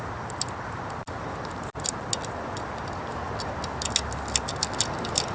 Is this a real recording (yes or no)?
yes